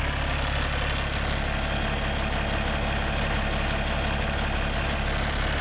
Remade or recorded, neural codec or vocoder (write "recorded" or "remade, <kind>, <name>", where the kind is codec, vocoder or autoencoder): recorded